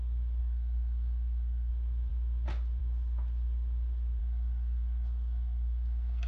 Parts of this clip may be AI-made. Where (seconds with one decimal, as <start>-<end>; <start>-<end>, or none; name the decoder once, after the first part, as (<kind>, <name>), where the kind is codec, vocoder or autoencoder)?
0.4-1.7 (codec, SNAC); 4.2-6.3